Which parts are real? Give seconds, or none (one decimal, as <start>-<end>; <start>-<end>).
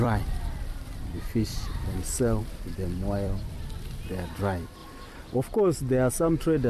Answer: 4.8-5.4